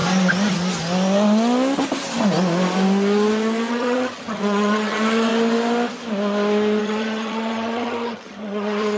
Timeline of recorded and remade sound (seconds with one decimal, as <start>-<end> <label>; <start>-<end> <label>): 0.0-3.7 recorded; 3.7-5.3 remade; 5.3-6.8 recorded; 6.8-9.0 remade